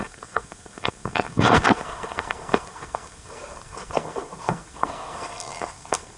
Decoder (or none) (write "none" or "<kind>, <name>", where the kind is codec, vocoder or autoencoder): codec, SNAC